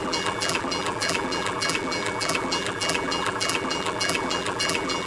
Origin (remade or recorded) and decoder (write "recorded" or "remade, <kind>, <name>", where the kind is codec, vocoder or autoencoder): remade, vocoder, BigVGAN v2